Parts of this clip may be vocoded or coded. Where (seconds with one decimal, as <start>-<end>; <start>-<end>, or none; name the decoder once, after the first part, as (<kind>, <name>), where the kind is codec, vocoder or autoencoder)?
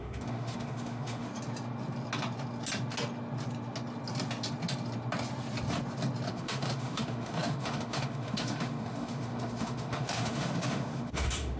0.0-1.3 (autoencoder, DAC-VAE); 6.3-11.6